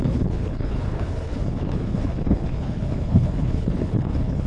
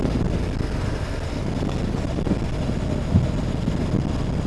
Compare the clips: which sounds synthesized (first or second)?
first